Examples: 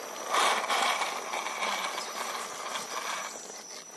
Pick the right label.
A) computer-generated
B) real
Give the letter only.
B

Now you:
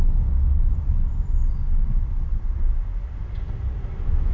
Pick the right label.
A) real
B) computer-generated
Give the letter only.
A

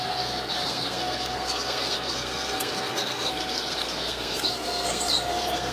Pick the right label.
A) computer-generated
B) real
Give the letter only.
A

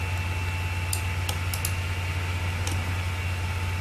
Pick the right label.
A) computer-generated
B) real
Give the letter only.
B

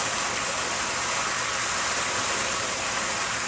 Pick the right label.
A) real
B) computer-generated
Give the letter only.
A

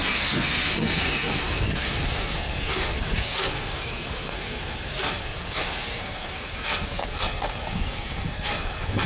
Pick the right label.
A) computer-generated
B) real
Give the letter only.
A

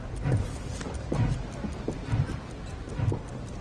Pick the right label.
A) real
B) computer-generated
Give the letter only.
A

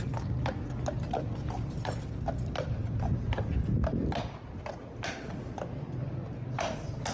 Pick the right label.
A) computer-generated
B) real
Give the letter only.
B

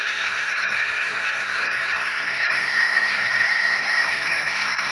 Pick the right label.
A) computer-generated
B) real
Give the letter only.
A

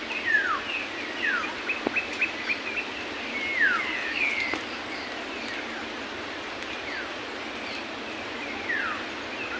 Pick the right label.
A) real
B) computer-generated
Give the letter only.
A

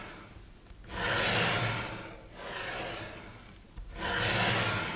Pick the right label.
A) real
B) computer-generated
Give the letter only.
A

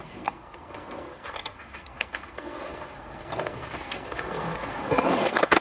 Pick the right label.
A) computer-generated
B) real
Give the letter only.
A